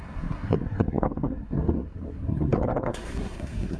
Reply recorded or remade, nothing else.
remade